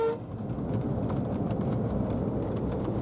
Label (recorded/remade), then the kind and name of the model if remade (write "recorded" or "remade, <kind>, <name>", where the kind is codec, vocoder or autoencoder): recorded